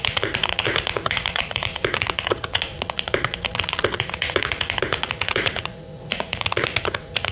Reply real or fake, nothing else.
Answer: fake